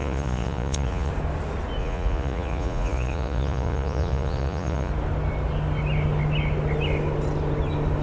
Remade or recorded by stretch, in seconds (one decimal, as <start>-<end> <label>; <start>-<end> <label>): 0.0-1.1 remade; 1.1-1.8 recorded; 1.8-4.9 remade; 4.9-8.0 recorded